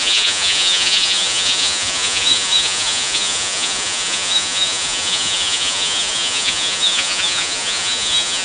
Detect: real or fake fake